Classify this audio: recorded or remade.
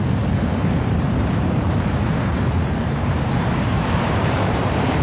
remade